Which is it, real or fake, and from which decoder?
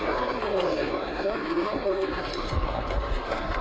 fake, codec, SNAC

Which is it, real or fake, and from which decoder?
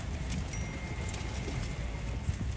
real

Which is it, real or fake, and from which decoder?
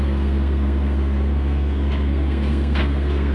fake, codec, SNAC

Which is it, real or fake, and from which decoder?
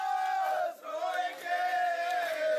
real